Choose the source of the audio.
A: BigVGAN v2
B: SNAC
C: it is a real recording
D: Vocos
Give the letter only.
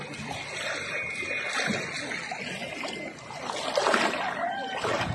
C